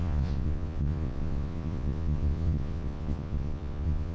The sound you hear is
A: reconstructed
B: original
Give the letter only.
A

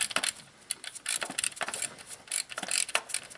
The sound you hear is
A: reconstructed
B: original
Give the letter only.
B